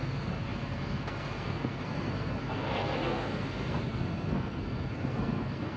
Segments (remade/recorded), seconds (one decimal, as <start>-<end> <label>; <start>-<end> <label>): 0.0-5.8 remade